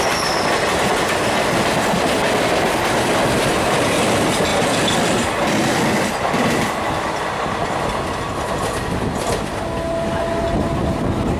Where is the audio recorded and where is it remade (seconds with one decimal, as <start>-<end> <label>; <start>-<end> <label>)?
0.0-11.4 recorded